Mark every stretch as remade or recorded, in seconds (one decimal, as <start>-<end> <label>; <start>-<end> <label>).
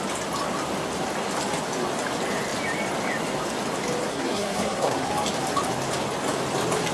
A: 0.0-4.1 recorded; 4.1-5.1 remade; 5.1-6.9 recorded